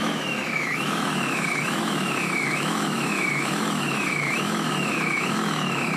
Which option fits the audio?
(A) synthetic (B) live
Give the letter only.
A